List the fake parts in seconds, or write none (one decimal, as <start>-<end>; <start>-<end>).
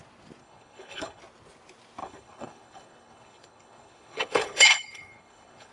0.4-1.2; 2.0-5.7